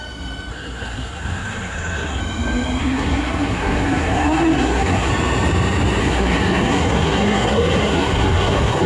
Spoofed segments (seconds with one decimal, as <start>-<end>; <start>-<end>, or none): 0.5-2.2; 2.8-5.1; 6.0-8.9